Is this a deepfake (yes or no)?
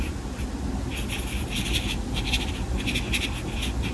no